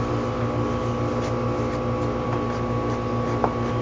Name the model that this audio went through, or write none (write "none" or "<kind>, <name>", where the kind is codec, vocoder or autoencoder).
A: none